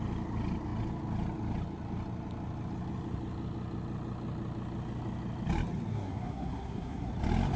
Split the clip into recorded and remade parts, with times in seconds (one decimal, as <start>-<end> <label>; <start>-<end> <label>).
0.0-5.9 recorded; 5.9-7.1 remade; 7.1-7.6 recorded